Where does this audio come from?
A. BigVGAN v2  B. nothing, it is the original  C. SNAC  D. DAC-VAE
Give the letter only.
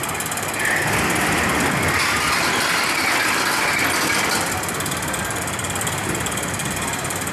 B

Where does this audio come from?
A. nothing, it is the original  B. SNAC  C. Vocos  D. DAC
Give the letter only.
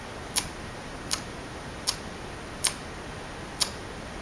A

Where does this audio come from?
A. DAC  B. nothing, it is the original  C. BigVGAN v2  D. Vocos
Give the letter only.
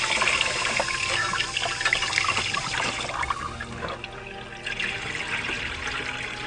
B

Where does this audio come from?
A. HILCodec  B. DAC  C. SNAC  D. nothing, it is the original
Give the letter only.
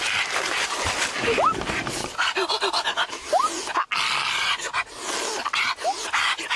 D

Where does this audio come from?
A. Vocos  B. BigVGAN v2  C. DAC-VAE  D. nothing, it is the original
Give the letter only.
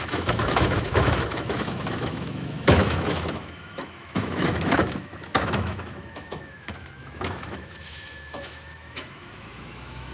C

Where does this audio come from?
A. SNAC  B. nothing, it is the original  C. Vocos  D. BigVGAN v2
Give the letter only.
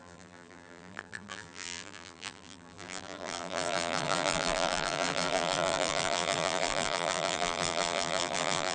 D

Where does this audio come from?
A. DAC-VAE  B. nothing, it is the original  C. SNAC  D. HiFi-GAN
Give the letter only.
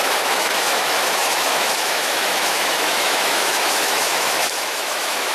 A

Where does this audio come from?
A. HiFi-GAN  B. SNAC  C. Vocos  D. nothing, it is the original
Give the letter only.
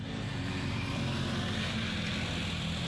D